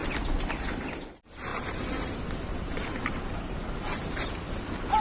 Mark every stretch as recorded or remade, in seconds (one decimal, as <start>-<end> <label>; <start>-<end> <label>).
0.0-0.5 remade; 0.5-1.5 recorded; 1.5-4.5 remade; 4.5-5.0 recorded